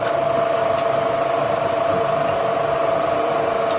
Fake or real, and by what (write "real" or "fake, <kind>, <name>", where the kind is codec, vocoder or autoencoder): real